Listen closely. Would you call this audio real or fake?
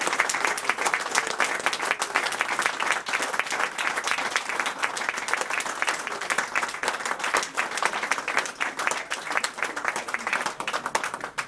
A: real